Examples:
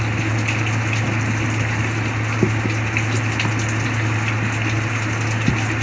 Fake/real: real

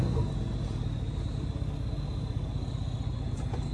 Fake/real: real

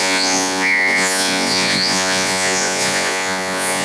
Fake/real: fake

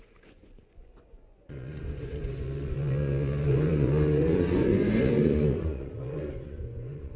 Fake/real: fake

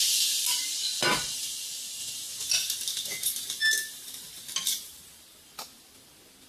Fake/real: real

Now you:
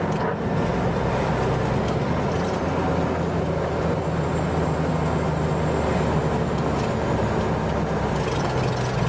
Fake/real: real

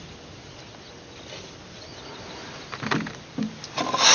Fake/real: real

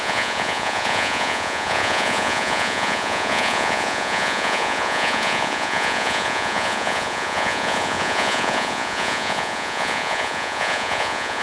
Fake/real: fake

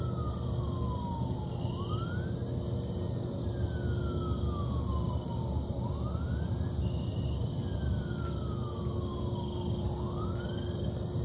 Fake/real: real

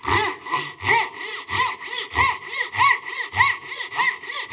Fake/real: real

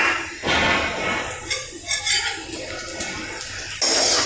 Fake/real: real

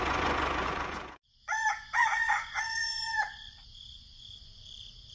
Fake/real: fake